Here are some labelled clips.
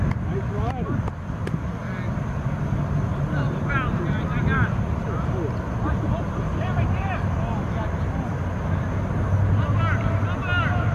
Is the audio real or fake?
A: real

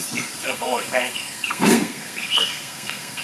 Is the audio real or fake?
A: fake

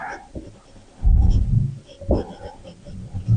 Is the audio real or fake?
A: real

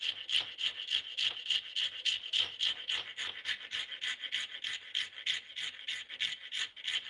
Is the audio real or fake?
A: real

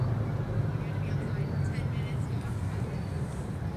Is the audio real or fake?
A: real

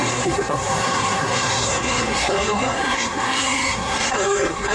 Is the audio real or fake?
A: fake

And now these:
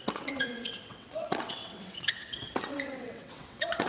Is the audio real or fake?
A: fake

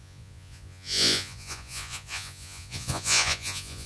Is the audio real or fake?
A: fake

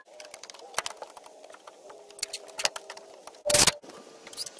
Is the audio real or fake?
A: real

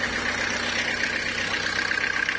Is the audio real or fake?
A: real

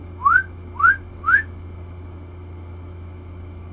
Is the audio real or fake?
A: fake